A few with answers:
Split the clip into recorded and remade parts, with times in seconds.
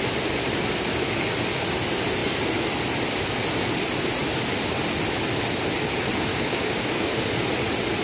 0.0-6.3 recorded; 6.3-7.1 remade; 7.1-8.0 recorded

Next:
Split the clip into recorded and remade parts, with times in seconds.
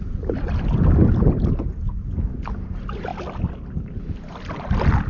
0.0-5.1 recorded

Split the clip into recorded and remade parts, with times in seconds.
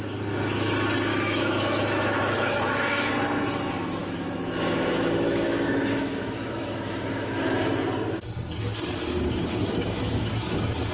0.0-1.1 recorded; 1.1-3.1 remade; 3.1-4.0 recorded; 4.0-7.6 remade; 7.6-9.4 recorded; 9.4-10.3 remade; 10.3-10.9 recorded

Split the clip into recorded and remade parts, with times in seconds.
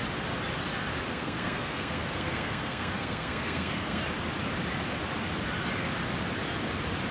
0.0-1.1 recorded; 1.1-4.0 remade; 4.0-7.1 recorded